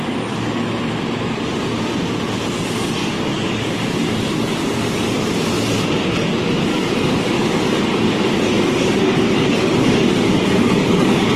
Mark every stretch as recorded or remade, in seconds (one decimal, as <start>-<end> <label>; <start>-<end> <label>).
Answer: 0.0-3.0 recorded; 3.0-5.3 remade; 5.3-6.7 recorded; 6.7-11.4 remade